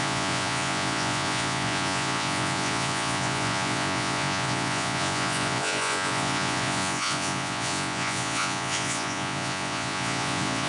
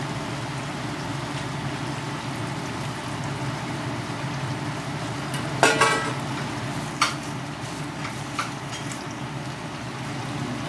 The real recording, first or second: second